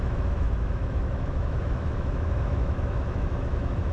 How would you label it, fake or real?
fake